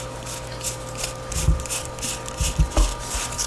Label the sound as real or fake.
real